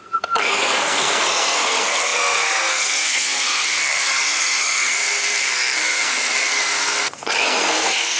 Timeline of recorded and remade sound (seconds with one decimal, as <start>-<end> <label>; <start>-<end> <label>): 0.0-8.2 remade